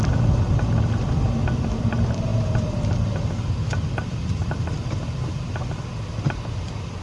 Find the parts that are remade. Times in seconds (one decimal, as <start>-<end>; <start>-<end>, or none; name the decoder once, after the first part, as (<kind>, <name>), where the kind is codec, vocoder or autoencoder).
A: none